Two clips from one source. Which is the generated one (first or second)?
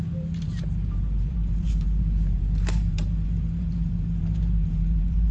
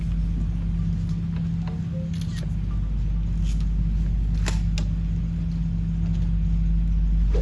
first